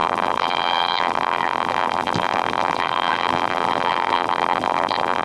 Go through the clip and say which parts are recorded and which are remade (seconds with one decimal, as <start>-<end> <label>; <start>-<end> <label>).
0.0-5.2 remade